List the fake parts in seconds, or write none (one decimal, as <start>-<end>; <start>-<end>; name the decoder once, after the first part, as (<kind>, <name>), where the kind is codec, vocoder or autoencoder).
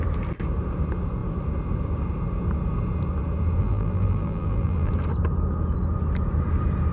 3.6-4.9 (vocoder, BigVGAN v2)